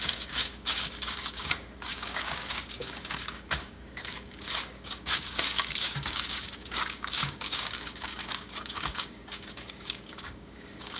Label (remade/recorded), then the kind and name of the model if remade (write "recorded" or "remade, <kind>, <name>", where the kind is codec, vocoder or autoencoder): remade, codec, DAC